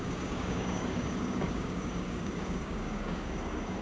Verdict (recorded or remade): remade